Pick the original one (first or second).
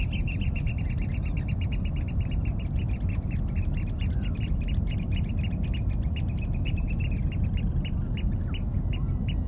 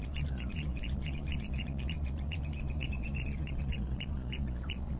first